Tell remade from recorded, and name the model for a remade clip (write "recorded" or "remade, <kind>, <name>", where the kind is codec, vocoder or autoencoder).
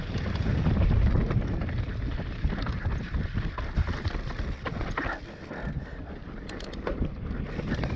recorded